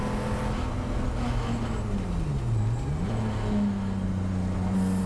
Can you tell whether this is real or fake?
real